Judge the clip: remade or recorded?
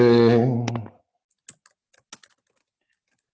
recorded